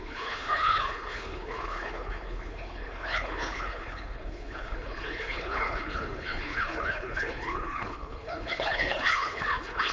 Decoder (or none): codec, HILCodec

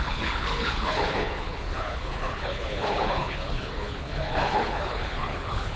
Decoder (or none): codec, HILCodec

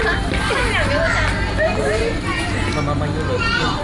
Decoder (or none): none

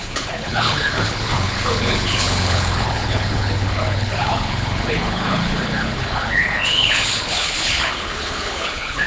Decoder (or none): codec, HILCodec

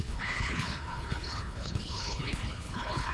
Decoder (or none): codec, HILCodec